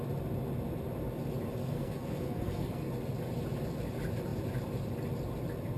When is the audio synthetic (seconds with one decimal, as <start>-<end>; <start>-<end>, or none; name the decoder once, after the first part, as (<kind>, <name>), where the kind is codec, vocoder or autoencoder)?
1.6-2.9 (codec, SNAC)